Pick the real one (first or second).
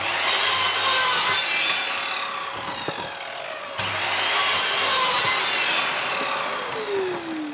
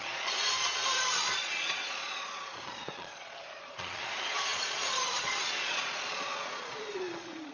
first